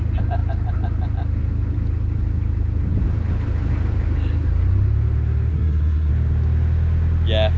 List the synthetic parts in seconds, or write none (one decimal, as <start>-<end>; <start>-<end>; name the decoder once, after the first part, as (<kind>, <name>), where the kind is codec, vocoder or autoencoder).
5.5-6.1 (codec, SNAC)